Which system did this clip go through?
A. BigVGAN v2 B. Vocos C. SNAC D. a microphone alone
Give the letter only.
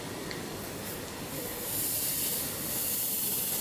D